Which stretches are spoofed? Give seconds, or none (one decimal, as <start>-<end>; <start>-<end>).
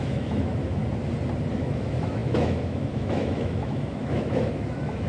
0.0-0.8; 1.5-5.1